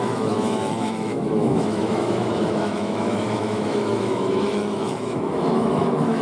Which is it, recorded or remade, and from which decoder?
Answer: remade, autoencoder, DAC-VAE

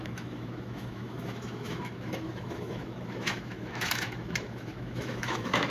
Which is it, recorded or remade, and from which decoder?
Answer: remade, autoencoder, DAC-VAE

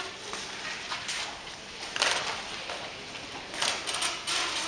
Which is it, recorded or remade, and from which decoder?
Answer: recorded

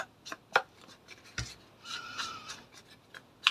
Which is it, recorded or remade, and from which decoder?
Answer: recorded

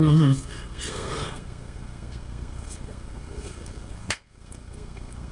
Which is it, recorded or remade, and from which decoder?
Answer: remade, codec, SNAC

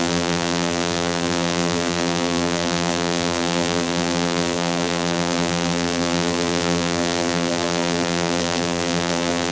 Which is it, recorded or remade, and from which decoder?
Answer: remade, vocoder, BigVGAN v2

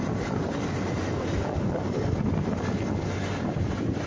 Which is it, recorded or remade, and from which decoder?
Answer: recorded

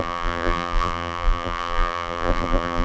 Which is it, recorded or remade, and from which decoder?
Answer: remade, vocoder, BigVGAN v2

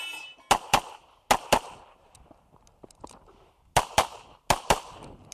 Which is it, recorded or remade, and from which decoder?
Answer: recorded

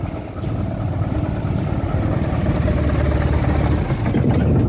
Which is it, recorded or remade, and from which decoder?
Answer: recorded